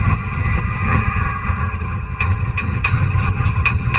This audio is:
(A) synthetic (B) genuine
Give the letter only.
A